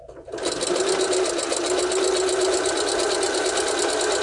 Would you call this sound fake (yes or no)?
no